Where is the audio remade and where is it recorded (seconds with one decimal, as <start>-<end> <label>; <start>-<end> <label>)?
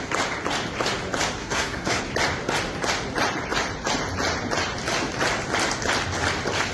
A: 0.0-1.4 recorded; 1.4-2.0 remade; 2.0-6.7 recorded